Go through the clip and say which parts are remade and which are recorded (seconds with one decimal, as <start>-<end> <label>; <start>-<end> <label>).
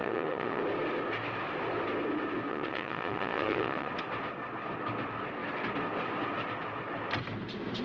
0.0-0.6 remade; 0.6-2.5 recorded; 2.5-3.9 remade; 3.9-7.8 recorded